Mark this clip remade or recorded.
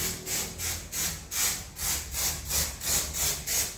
recorded